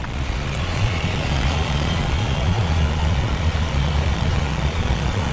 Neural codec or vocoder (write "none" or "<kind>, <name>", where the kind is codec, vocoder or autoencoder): vocoder, Vocos